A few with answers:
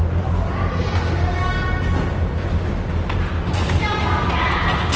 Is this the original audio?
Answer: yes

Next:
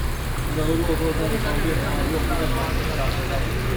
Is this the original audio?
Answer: yes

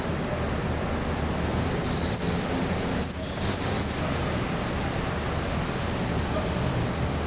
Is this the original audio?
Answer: yes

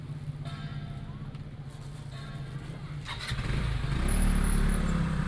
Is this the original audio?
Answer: yes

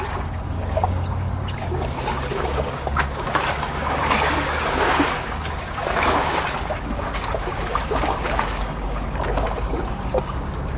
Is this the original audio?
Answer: no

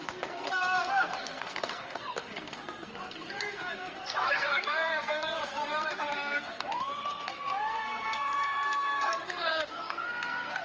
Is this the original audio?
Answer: no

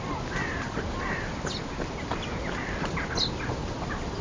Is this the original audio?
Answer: yes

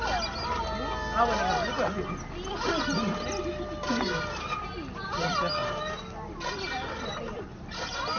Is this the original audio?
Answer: yes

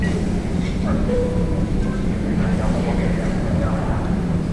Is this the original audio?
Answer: no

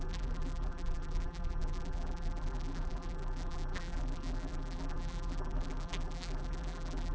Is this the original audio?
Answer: no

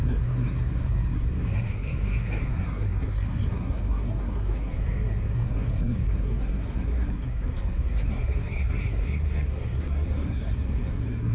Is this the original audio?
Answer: no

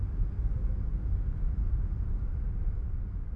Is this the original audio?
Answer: yes